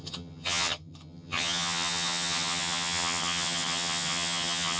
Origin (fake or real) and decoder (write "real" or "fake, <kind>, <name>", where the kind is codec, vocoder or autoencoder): fake, vocoder, HiFi-GAN